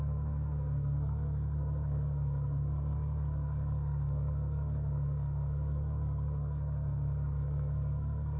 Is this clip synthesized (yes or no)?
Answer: yes